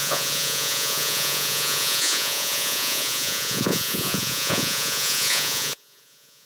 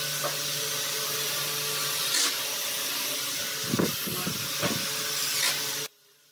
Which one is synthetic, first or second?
first